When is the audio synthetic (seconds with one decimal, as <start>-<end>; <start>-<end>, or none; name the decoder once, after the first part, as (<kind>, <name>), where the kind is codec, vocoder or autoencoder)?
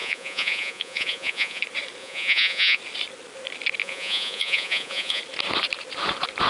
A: 0.0-1.6 (vocoder, Vocos); 2.0-2.8; 3.8-5.2